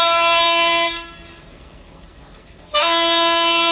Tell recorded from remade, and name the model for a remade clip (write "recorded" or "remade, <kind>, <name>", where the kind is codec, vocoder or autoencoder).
remade, codec, SNAC